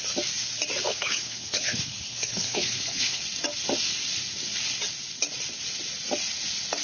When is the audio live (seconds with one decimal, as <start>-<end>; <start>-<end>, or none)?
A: 0.0-0.9; 3.2-6.8